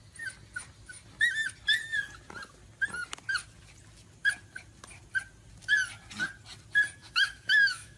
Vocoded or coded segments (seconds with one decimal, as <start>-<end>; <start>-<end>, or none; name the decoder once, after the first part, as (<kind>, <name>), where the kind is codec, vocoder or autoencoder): 7.0-8.0 (autoencoder, DAC-VAE)